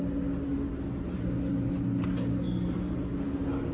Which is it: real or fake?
real